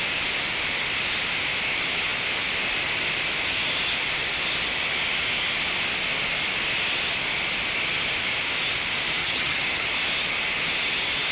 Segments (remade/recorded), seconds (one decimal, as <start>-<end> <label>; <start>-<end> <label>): 0.0-9.2 recorded; 9.2-9.9 remade; 9.9-11.3 recorded